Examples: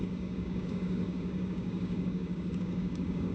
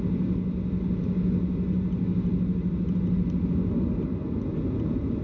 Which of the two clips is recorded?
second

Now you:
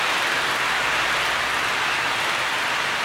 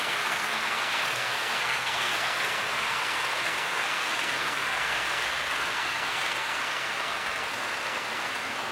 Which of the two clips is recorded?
first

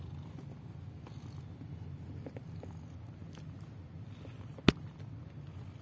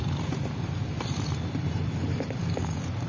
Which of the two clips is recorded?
first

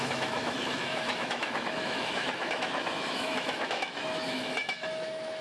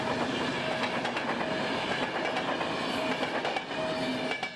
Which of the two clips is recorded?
second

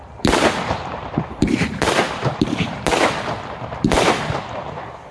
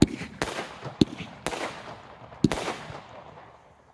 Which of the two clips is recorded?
second